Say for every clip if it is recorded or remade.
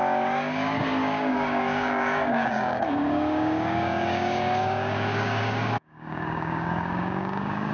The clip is remade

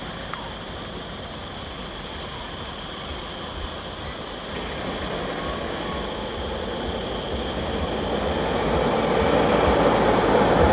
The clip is recorded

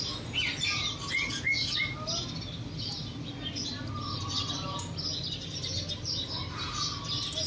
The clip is recorded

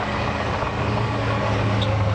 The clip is remade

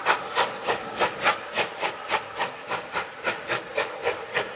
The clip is recorded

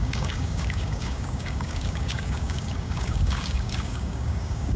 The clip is remade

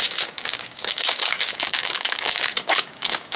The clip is remade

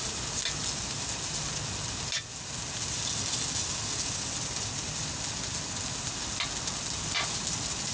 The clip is recorded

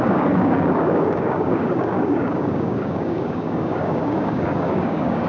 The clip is remade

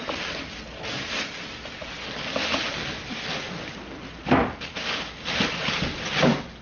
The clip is recorded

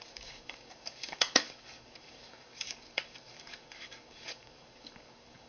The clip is remade